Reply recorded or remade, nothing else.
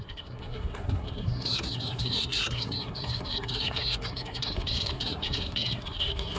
remade